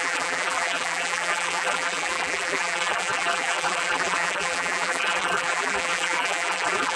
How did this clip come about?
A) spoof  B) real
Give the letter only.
A